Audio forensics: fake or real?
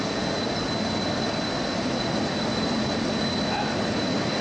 real